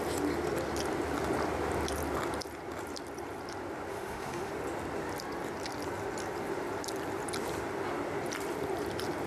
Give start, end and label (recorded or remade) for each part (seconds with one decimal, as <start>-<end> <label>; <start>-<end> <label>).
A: 0.0-3.9 recorded; 3.9-4.5 remade; 4.5-9.3 recorded